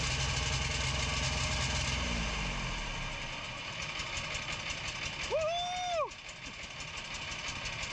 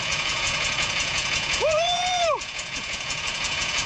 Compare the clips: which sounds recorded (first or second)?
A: first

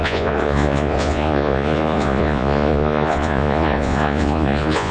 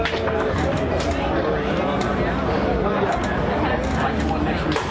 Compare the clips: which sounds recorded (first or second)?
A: second